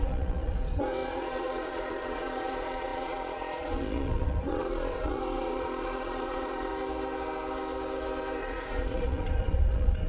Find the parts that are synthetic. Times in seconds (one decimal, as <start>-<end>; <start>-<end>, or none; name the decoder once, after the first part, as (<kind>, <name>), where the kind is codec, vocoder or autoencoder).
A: 0.0-6.7 (vocoder, Vocos); 8.4-10.1